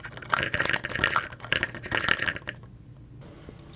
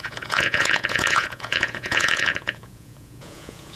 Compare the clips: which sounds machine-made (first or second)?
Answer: second